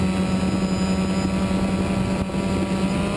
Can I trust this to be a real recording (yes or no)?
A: yes